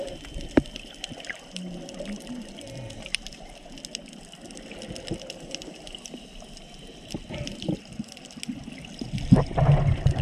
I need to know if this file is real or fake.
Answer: real